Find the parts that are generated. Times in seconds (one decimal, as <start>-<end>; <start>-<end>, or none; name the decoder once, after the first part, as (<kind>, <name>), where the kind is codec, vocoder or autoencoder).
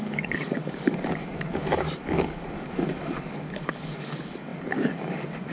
0.0-5.5 (codec, DAC)